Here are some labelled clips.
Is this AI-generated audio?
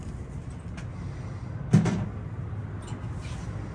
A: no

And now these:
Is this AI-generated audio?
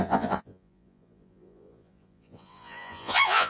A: yes